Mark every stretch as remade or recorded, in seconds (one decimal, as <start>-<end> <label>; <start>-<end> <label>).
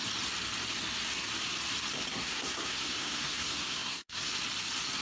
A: 0.0-2.1 recorded; 2.1-4.3 remade; 4.3-5.0 recorded